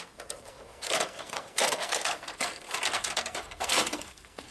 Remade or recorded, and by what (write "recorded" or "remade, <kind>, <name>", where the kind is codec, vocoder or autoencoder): remade, codec, SNAC